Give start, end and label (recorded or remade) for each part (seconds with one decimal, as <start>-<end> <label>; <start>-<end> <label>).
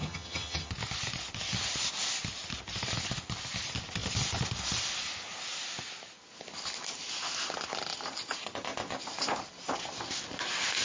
0.0-0.7 remade; 0.7-10.8 recorded